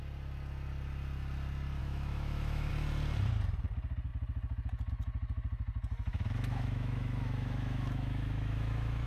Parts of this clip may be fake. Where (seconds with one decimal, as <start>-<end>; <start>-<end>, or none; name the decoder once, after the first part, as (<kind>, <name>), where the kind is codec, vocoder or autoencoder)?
1.8-2.7 (autoencoder, DAC-VAE); 6.1-9.1